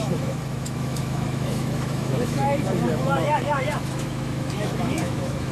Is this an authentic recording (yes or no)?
no